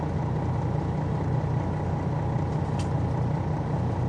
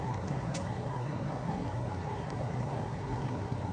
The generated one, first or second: second